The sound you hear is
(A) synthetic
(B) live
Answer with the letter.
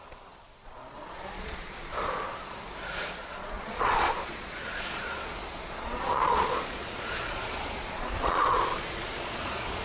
A